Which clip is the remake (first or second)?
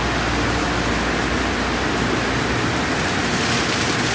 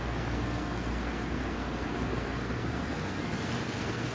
second